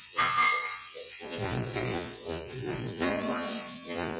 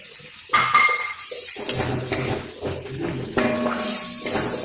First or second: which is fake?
first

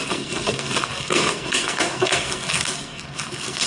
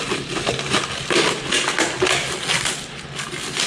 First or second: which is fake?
first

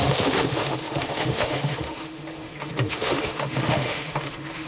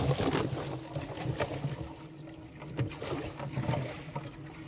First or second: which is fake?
first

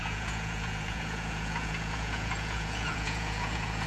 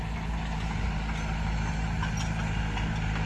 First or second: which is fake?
first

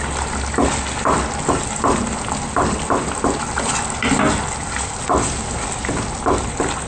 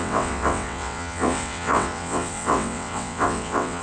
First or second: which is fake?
second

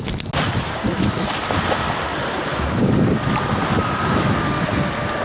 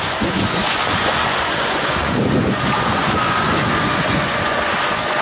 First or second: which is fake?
second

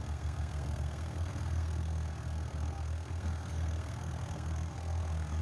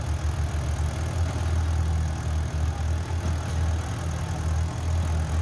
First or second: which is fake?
first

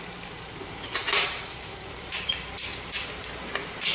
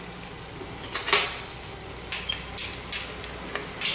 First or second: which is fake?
first